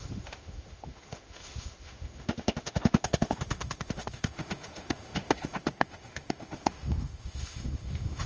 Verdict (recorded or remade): remade